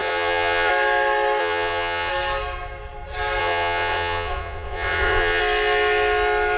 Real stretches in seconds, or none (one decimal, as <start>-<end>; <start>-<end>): 0.7-1.4; 2.1-3.4; 5.4-6.6